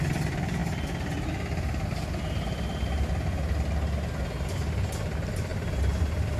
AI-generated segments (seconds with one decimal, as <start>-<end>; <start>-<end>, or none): none